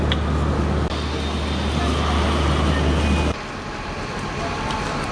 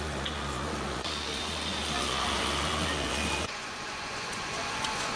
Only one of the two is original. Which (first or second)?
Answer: first